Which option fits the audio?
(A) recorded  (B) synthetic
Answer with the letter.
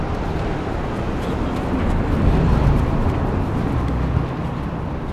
A